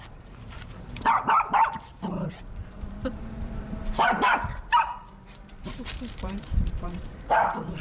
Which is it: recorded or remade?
remade